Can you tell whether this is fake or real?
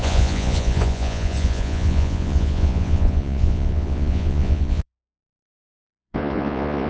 fake